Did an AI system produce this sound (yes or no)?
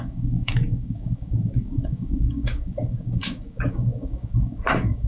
yes